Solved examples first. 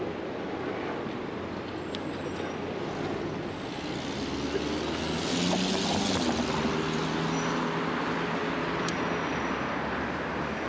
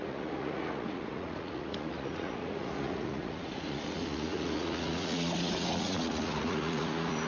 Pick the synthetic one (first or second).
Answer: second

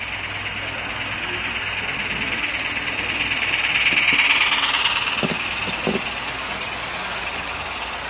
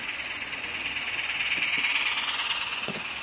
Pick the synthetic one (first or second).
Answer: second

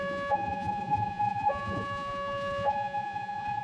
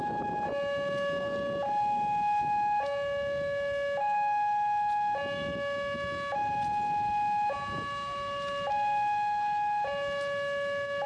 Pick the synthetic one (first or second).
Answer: first